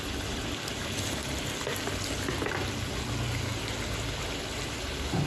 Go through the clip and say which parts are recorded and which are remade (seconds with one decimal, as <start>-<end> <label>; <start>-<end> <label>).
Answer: 0.0-5.3 recorded